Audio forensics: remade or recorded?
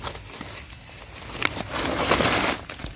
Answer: recorded